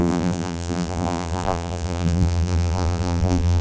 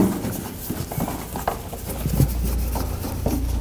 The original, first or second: second